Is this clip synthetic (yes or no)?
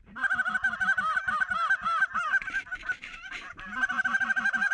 yes